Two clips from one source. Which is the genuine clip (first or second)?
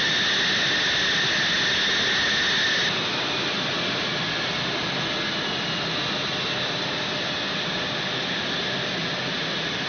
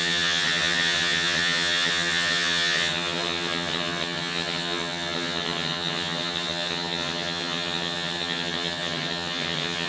first